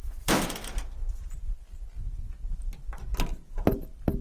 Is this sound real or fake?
real